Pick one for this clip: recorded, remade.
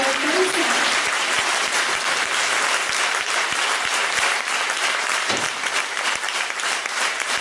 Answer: remade